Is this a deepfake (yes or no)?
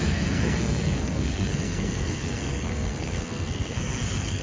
yes